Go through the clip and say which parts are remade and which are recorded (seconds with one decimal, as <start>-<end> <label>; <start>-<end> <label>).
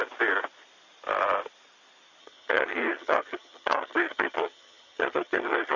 0.0-2.2 recorded; 2.2-5.8 remade